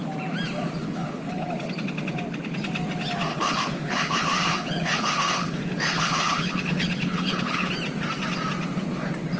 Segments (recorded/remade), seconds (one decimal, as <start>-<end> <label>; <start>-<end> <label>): 0.0-0.8 recorded; 0.8-1.5 remade; 1.5-3.3 recorded; 3.3-7.7 remade; 7.7-9.4 recorded